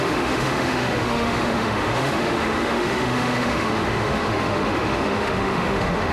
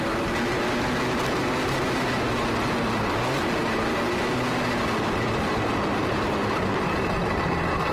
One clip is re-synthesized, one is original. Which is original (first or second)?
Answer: second